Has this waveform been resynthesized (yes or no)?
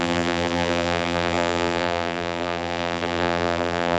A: yes